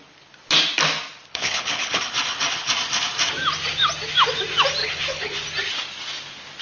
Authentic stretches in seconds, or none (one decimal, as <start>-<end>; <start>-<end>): 0.0-1.3; 2.0-4.8; 5.4-6.6

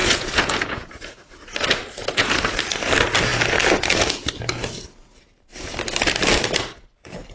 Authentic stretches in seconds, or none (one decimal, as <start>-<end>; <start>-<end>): 1.3-2.0; 2.6-7.3

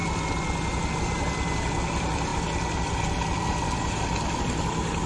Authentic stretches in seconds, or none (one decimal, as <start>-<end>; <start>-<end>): 0.0-5.1

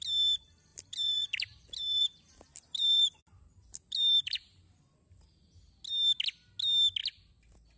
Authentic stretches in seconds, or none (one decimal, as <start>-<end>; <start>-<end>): 0.0-0.7; 4.9-7.8

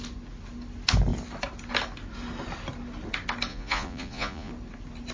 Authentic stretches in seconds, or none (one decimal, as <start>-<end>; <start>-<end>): 0.0-3.5; 4.5-5.1

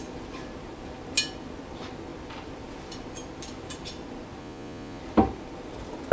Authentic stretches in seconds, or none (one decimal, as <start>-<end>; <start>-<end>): 0.0-4.4; 5.0-6.1

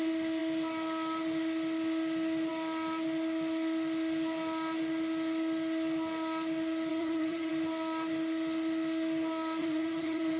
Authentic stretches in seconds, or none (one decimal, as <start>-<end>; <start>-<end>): 0.0-6.9; 7.5-9.6

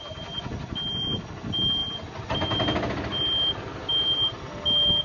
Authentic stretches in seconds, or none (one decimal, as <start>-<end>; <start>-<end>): 0.0-5.0